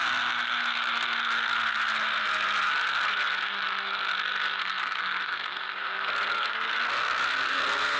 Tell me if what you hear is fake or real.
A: fake